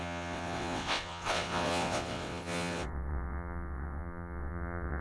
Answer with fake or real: fake